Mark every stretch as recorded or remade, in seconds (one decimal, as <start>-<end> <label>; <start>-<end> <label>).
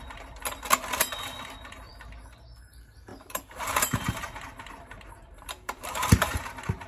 0.0-3.1 recorded; 3.1-6.4 remade; 6.4-6.9 recorded